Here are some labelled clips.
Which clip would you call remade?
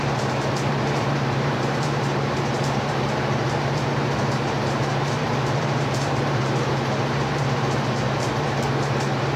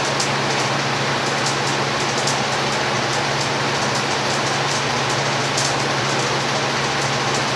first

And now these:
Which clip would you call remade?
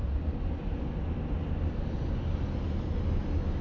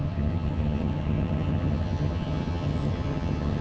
second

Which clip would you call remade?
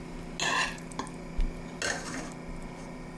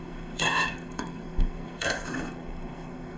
second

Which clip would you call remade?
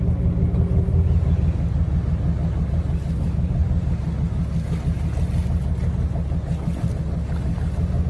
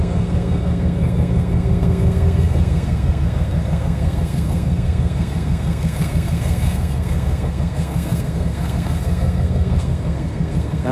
second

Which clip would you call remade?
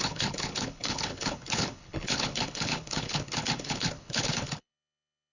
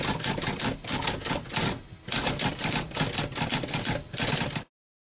first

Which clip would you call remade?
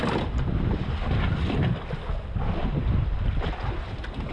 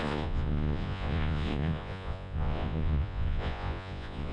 second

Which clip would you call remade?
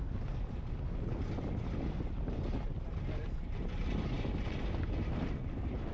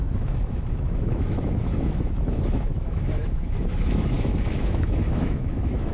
second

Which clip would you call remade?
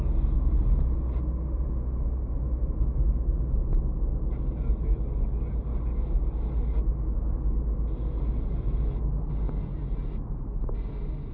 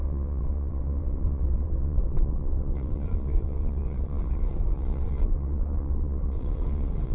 second